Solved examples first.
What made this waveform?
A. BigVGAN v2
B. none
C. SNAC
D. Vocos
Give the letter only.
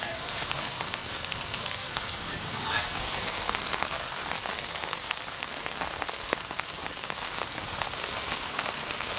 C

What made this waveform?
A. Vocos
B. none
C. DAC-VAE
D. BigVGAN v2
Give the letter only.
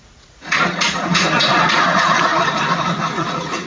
A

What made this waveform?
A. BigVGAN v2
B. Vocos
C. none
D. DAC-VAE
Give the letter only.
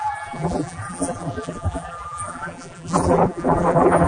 A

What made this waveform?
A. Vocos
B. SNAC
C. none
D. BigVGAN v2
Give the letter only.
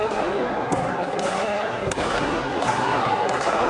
B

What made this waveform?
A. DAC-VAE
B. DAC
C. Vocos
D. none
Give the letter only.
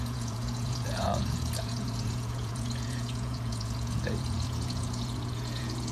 C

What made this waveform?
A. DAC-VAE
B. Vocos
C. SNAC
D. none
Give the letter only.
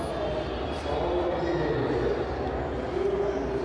D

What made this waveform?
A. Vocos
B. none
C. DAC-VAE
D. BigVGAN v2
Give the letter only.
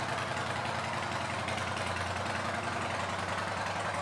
B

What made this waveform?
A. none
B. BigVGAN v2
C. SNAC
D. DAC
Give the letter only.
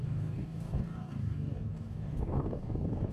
D